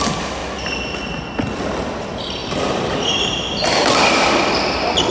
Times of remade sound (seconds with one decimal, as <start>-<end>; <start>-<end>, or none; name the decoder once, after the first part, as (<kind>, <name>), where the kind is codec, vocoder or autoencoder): none